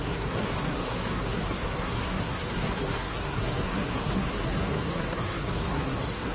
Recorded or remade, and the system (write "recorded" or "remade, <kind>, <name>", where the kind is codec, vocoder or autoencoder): remade, codec, SNAC